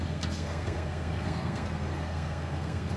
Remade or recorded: remade